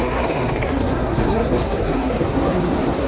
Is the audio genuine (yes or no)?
no